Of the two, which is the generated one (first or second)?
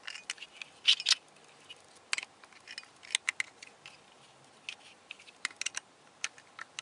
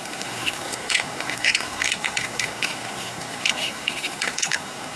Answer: second